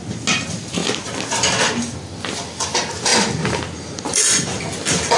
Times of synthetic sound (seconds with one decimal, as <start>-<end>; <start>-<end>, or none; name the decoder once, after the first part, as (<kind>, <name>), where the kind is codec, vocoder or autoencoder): none